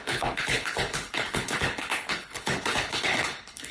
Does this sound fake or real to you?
fake